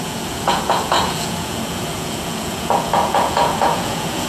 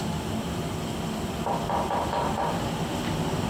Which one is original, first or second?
second